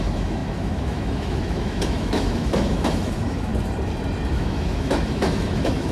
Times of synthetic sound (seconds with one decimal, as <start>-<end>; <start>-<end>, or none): 0.0-3.5; 4.3-5.9